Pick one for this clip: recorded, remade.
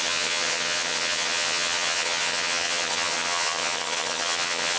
remade